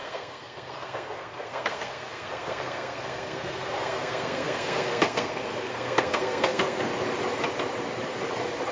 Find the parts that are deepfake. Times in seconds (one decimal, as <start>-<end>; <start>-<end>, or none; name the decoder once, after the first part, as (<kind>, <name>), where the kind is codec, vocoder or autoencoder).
0.0-6.9 (codec, SNAC)